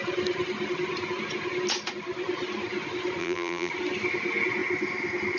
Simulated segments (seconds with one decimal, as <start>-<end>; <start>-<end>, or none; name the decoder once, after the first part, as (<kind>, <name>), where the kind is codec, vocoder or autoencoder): 3.2-3.7 (vocoder, BigVGAN v2)